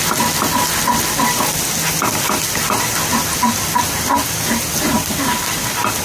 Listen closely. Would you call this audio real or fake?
real